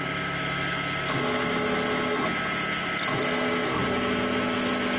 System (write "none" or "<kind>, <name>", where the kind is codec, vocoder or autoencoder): none